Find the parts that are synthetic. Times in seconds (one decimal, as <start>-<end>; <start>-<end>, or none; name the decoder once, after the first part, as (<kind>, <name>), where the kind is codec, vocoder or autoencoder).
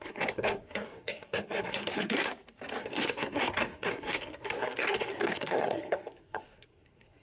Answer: 0.0-2.3 (codec, SNAC); 2.8-7.2